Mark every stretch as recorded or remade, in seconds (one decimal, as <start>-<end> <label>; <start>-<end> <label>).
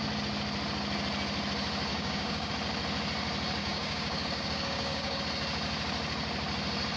0.0-1.9 recorded; 1.9-2.5 remade; 2.5-3.6 recorded; 3.6-5.2 remade; 5.2-7.0 recorded